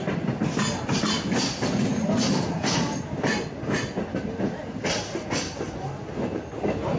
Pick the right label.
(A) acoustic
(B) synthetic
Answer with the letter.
A